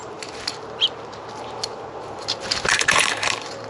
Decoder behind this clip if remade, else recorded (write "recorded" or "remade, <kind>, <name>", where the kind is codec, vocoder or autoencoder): remade, vocoder, BigVGAN v2